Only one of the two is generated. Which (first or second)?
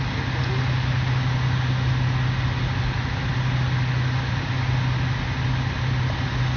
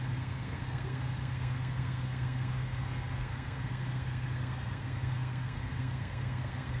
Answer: second